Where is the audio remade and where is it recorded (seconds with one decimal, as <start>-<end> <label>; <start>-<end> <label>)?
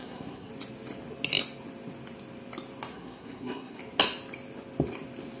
0.0-0.5 remade; 0.5-2.9 recorded; 2.9-3.8 remade; 3.8-5.4 recorded